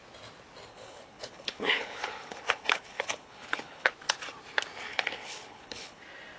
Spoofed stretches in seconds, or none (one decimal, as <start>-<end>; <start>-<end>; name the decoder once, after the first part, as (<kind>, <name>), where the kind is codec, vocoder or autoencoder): 0.7-3.9 (codec, HILCodec); 4.9-6.0